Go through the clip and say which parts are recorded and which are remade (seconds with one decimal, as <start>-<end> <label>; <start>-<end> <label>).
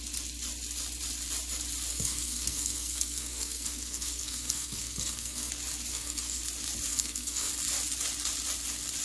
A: 0.0-1.9 recorded; 1.9-5.5 remade; 5.5-5.9 recorded; 5.9-6.4 remade; 6.4-6.9 recorded; 6.9-7.5 remade; 7.5-9.0 recorded